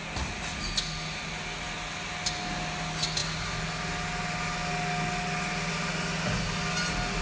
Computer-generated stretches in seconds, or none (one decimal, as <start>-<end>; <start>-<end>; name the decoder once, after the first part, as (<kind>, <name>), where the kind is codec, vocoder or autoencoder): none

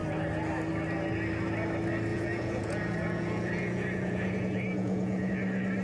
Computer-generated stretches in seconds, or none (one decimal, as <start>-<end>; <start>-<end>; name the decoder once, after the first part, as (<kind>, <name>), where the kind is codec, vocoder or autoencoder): 2.1-5.3 (vocoder, Vocos)

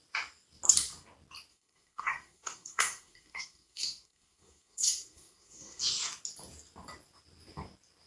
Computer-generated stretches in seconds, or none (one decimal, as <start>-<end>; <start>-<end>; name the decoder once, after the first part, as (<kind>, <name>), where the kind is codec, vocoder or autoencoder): 1.5-5.8 (codec, SNAC)

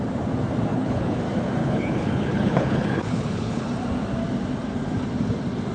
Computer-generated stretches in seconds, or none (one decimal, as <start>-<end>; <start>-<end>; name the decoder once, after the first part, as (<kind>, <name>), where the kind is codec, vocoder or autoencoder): 0.7-1.2 (codec, HILCodec); 1.6-3.7

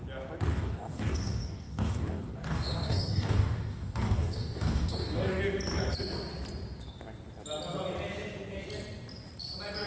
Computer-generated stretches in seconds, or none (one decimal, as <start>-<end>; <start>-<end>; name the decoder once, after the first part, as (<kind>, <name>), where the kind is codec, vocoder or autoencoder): 0.5-5.4 (codec, DAC)